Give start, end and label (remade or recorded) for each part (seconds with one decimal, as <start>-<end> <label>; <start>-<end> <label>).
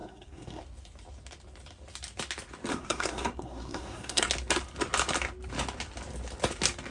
0.0-0.6 remade; 0.6-2.7 recorded; 2.7-4.3 remade; 4.3-6.9 recorded